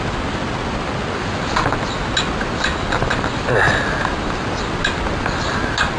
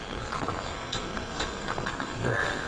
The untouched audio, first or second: first